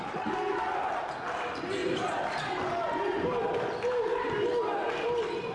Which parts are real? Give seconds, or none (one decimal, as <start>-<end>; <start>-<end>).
0.0-1.8; 2.5-5.5